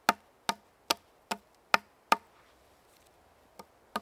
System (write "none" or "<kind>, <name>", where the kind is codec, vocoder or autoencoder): none